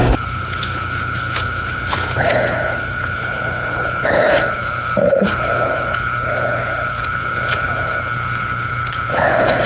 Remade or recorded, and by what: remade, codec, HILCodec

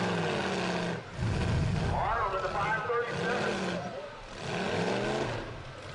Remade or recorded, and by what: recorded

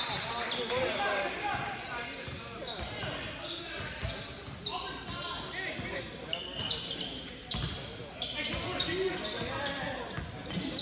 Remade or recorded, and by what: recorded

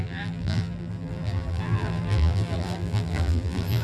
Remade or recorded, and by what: remade, vocoder, BigVGAN v2